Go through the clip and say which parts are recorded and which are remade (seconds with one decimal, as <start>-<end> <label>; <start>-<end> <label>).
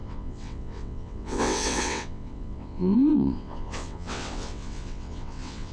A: 0.0-5.7 remade